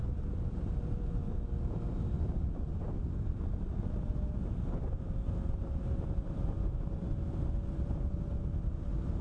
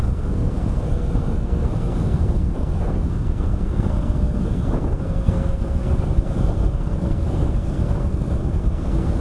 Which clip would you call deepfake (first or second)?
second